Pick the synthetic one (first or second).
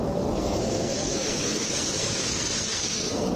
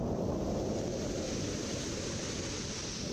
first